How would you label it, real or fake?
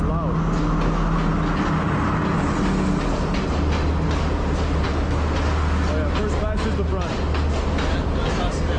real